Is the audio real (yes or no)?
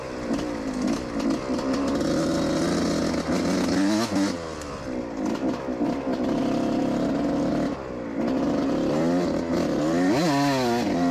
yes